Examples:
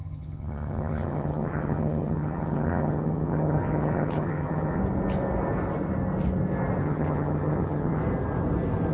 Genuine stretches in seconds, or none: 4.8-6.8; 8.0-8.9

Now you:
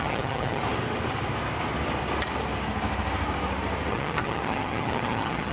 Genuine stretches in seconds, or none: 0.6-3.9

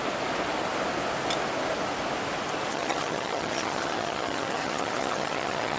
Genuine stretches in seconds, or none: 0.0-2.7

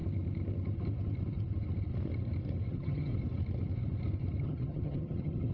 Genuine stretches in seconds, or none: 0.0-2.7; 3.1-4.4

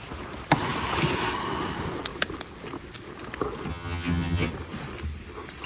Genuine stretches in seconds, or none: 0.0-3.7; 4.5-5.7

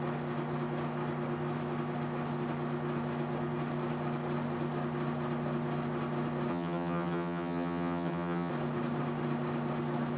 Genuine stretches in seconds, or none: 0.0-6.5; 8.5-10.2

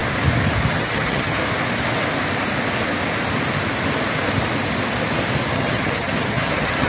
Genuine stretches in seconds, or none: 0.0-0.7; 1.4-5.5